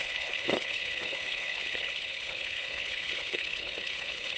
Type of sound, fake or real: fake